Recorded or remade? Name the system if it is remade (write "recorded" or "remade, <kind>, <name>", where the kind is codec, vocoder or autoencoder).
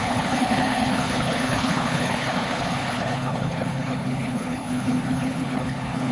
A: remade, codec, HILCodec